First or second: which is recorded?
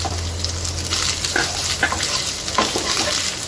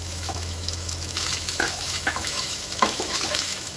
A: first